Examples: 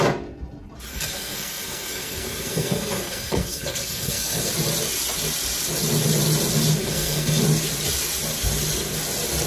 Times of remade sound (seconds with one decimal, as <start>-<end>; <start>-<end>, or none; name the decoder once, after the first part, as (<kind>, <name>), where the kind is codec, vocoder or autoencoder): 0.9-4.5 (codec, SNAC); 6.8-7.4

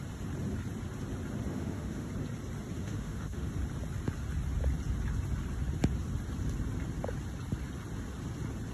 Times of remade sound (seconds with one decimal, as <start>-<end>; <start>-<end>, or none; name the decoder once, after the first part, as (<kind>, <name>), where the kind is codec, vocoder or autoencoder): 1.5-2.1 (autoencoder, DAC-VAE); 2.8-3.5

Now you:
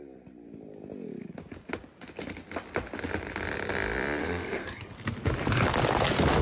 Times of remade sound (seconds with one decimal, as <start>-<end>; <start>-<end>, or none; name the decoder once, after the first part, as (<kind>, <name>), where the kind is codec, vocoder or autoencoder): 4.2-4.8 (codec, SNAC)

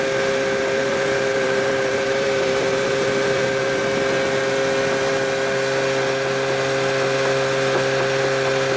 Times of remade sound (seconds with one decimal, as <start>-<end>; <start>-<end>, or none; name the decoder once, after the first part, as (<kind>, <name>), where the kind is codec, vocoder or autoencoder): 0.8-3.8 (vocoder, BigVGAN v2)